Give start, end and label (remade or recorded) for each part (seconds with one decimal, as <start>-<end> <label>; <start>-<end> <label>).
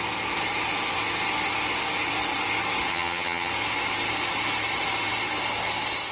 0.0-2.9 recorded; 2.9-3.5 remade; 3.5-6.1 recorded